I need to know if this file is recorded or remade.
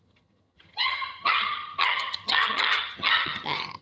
remade